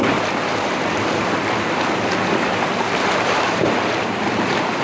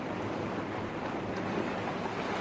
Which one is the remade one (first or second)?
first